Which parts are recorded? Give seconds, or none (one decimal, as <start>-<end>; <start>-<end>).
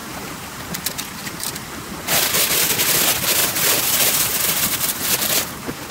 0.7-1.2; 2.3-3.4; 5.4-5.9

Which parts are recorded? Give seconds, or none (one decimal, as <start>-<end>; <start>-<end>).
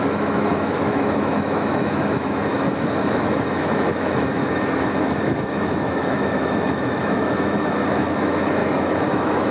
none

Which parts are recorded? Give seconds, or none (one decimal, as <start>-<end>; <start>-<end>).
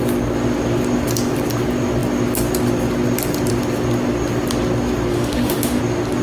0.0-5.1; 5.8-6.2